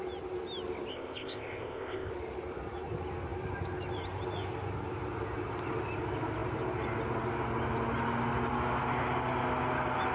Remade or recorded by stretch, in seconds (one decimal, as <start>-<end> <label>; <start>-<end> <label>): 0.0-0.9 recorded; 0.9-2.1 remade; 2.1-10.1 recorded

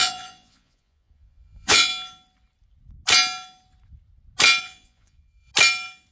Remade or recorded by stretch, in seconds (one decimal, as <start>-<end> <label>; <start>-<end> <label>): 0.0-1.9 remade; 1.9-4.6 recorded; 4.6-5.5 remade; 5.5-6.1 recorded

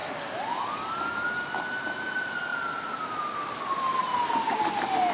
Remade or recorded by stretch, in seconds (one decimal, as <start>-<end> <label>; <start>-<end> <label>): 0.0-5.1 recorded

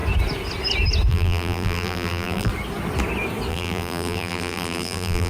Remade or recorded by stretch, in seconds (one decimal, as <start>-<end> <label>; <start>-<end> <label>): 0.0-1.1 recorded; 1.1-2.5 remade; 2.5-3.5 recorded; 3.5-5.3 remade

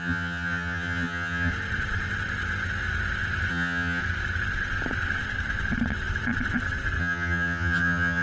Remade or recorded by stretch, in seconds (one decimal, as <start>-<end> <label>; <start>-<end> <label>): 0.0-1.5 remade; 1.5-3.5 recorded; 3.5-4.0 remade; 4.0-7.0 recorded; 7.0-8.2 remade

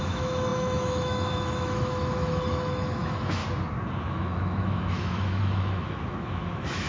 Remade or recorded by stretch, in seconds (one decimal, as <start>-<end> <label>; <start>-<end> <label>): 0.0-3.4 remade; 3.4-4.0 recorded; 4.0-6.9 remade

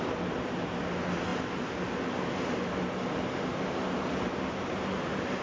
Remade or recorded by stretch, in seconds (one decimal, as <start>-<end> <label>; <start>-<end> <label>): 0.0-5.4 recorded

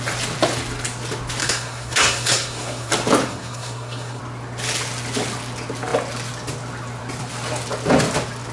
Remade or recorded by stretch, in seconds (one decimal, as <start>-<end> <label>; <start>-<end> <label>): 0.0-1.4 recorded; 1.4-2.9 remade; 2.9-3.3 recorded; 3.3-4.2 remade; 4.2-8.5 recorded